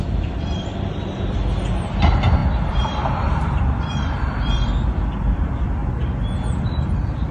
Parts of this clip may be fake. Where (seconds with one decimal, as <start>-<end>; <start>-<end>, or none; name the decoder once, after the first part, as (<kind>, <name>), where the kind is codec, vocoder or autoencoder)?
0.0-0.7 (vocoder, BigVGAN v2); 1.2-5.8